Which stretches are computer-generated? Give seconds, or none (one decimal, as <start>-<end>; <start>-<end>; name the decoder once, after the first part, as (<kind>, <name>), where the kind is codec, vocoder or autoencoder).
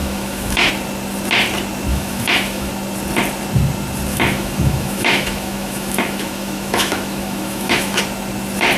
0.0-0.7 (autoencoder, DAC-VAE); 1.9-2.7; 4.1-8.0